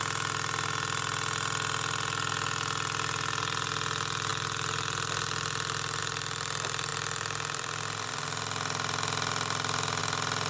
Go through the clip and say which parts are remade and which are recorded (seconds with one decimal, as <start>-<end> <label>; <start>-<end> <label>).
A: 0.0-10.5 recorded